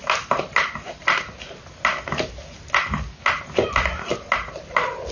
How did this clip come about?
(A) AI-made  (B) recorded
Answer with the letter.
B